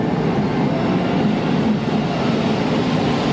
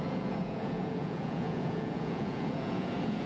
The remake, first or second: second